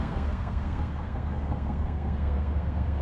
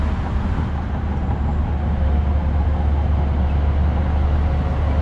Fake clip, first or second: first